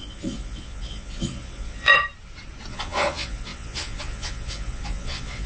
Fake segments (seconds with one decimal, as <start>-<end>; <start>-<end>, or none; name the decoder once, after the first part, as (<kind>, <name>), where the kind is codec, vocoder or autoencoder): 0.0-1.9 (vocoder, Vocos); 2.7-5.5